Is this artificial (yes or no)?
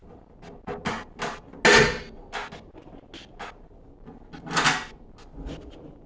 no